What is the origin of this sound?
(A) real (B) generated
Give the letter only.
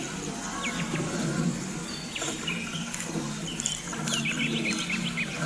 A